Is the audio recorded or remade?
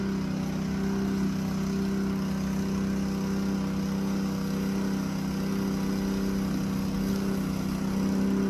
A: recorded